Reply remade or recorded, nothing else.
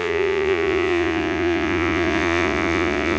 remade